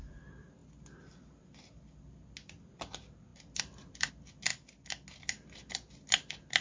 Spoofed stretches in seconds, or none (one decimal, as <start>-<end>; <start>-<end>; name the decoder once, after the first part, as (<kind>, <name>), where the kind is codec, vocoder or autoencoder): none

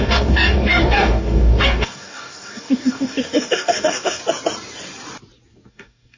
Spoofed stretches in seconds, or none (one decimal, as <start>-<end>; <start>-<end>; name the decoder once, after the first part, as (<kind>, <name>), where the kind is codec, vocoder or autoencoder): 0.0-4.2 (codec, DAC); 5.7-6.2